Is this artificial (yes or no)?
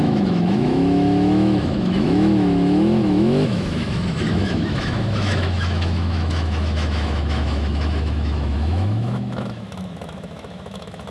yes